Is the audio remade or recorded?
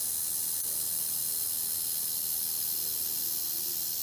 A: recorded